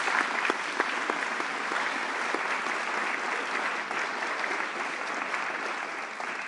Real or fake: real